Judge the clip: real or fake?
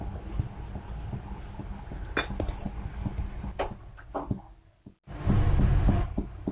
real